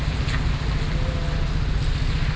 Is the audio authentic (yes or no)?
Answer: yes